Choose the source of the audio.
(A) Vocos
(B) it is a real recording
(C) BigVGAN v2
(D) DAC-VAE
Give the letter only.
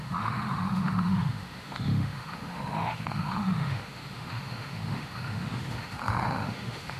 D